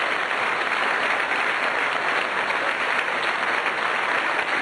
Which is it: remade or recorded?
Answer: recorded